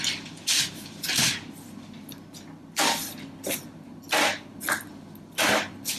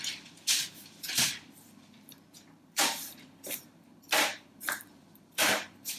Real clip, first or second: first